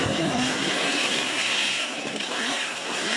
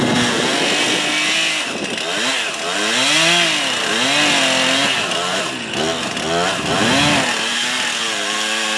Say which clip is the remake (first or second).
first